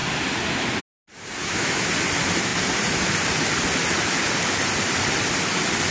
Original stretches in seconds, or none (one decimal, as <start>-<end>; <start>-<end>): 0.0-1.4; 1.9-5.9